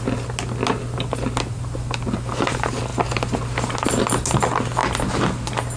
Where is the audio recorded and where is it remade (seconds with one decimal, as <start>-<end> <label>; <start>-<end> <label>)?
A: 0.0-5.8 recorded